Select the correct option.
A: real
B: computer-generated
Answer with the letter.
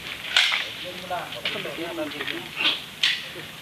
A